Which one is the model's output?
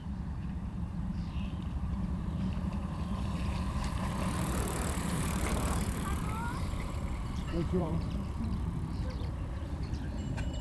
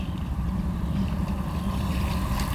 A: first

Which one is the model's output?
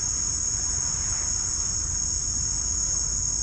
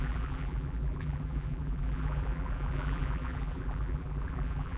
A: second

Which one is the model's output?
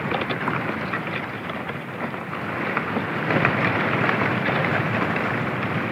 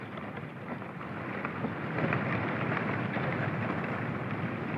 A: first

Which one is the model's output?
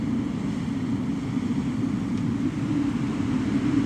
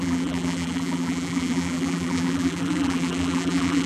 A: second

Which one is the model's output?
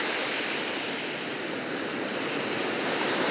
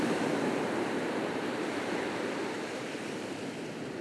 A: second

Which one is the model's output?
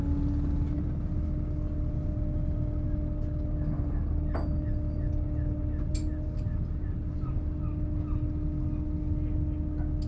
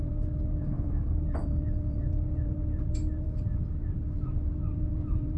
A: second